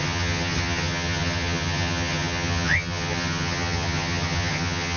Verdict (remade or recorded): remade